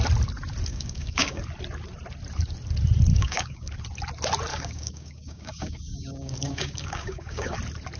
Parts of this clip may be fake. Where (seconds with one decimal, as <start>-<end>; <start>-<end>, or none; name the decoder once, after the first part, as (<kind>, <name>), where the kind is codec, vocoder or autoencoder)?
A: 0.7-1.4 (codec, DAC); 3.1-3.7; 4.5-7.6